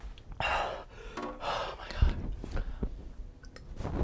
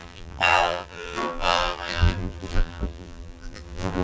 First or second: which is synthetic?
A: second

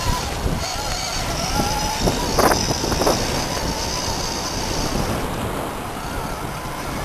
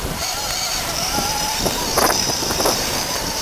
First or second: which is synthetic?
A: second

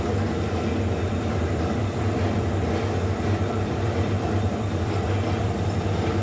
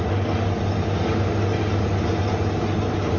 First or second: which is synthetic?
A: first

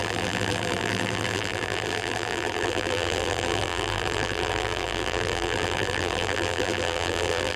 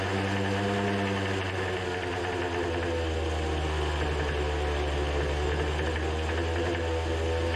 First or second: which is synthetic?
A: first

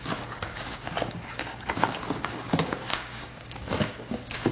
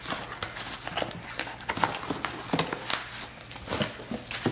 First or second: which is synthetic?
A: first